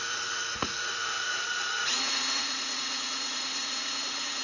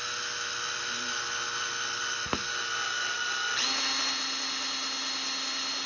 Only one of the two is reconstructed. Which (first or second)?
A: first